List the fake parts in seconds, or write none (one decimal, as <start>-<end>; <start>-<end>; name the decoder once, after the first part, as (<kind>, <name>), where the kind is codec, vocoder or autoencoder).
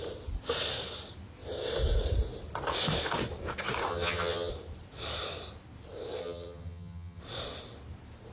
3.9-4.5 (vocoder, HiFi-GAN); 6.2-7.2